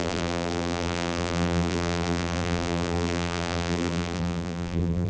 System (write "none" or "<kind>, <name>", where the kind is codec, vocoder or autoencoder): vocoder, BigVGAN v2